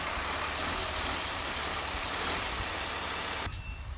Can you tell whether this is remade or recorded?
remade